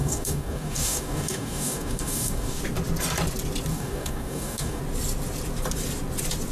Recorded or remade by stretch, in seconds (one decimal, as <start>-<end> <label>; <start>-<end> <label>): 0.0-2.6 remade; 2.6-3.7 recorded; 3.7-4.8 remade; 4.8-6.5 recorded